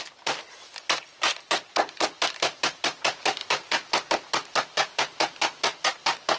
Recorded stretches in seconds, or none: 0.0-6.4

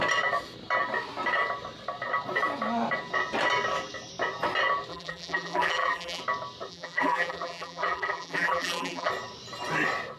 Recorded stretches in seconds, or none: 0.0-4.9; 6.2-6.7; 9.1-10.2

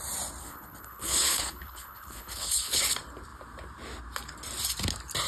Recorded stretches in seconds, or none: 0.0-0.4; 2.8-5.3

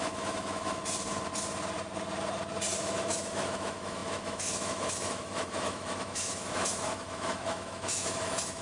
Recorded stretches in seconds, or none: 0.8-2.8

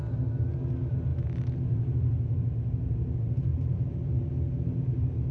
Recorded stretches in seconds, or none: 0.0-3.5; 4.3-5.3

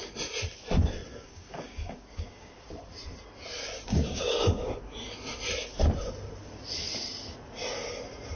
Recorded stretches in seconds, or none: 0.0-1.1; 2.5-3.9; 4.7-8.4

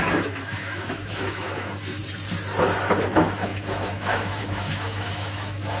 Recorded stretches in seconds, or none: 2.0-3.0